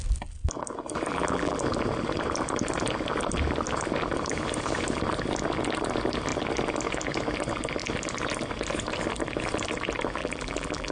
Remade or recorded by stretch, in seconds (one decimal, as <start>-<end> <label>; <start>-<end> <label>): 0.0-1.1 recorded; 1.1-1.6 remade; 1.6-10.2 recorded; 10.2-10.9 remade